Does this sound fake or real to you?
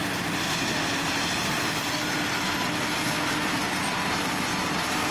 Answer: real